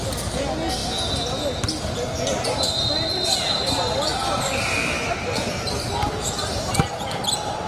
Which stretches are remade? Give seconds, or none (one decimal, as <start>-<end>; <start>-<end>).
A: none